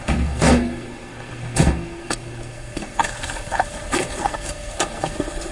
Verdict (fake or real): fake